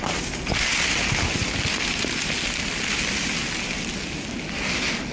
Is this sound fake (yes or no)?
no